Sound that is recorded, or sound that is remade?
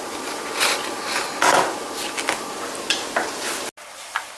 recorded